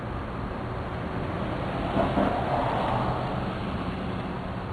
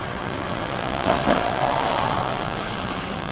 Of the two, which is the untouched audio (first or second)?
first